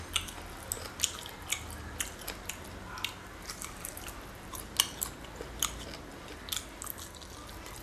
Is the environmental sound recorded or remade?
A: recorded